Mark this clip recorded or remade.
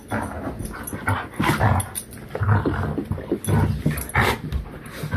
recorded